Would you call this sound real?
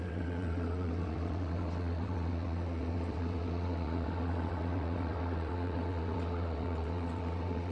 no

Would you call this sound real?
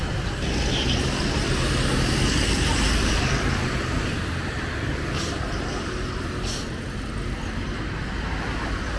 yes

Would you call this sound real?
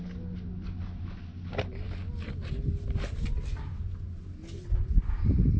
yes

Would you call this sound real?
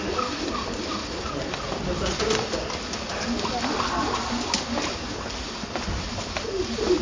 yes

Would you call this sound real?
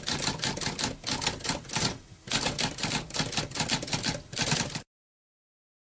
yes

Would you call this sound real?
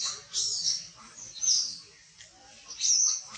yes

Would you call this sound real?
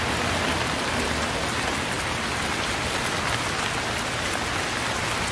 yes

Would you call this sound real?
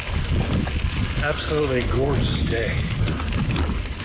yes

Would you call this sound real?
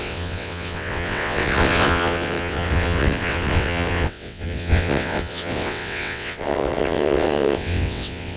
no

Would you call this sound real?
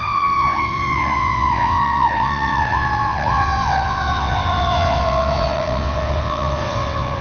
no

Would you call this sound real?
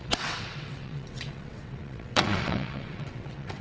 no